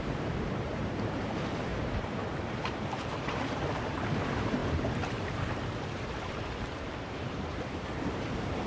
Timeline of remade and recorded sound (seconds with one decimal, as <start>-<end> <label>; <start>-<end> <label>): 0.0-8.7 remade